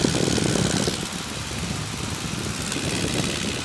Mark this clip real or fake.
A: real